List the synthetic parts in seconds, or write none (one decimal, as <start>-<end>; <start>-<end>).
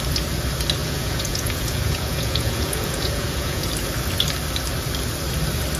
0.8-3.7